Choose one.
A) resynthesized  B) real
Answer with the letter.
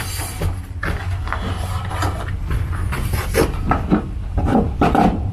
B